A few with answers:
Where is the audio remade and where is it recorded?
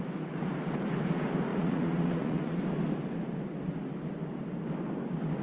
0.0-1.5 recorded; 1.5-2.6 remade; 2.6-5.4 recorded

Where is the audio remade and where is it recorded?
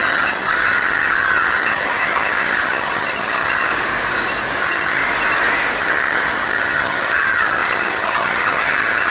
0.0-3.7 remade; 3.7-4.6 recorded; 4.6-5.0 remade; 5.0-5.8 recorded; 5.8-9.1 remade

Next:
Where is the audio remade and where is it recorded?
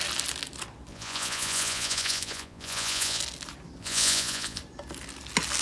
0.0-0.9 recorded; 0.9-3.2 remade; 3.2-3.8 recorded; 3.8-4.6 remade; 4.6-5.6 recorded